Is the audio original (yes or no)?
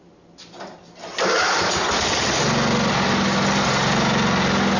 yes